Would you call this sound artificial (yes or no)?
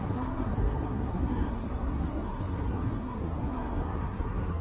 yes